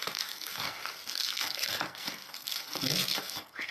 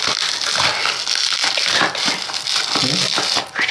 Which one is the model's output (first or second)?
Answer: first